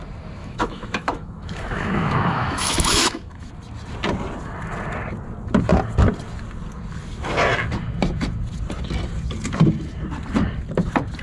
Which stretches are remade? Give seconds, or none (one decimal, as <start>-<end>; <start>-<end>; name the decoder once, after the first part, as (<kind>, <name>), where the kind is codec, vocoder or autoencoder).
0.4-3.5 (autoencoder, DAC-VAE)